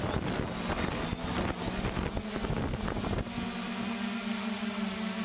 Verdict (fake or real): real